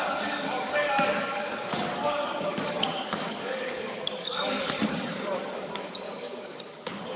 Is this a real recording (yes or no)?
no